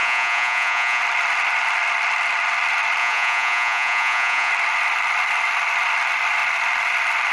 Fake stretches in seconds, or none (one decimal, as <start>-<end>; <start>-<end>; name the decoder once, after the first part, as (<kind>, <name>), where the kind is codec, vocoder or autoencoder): 0.0-1.0 (vocoder, Vocos); 3.0-4.5